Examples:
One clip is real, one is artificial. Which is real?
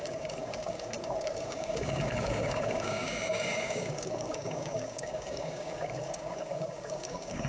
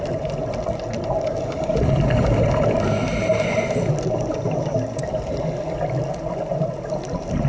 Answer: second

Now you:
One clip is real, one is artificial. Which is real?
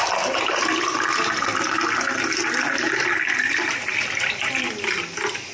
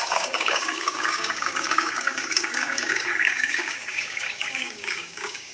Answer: first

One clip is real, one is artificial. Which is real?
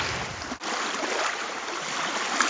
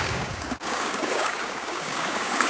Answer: first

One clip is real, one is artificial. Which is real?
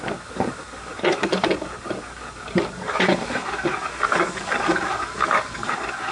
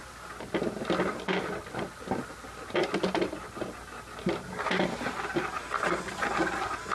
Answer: second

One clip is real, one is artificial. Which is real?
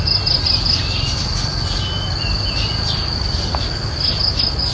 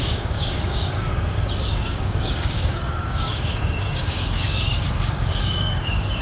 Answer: first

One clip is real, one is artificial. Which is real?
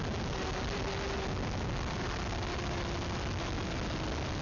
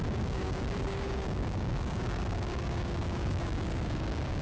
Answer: first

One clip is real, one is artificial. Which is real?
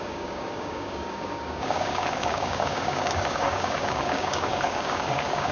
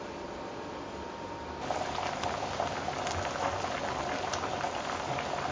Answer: second